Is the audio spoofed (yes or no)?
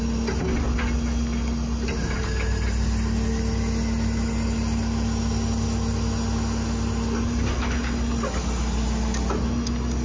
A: no